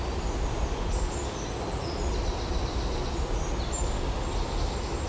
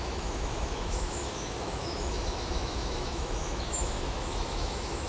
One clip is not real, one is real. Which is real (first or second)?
first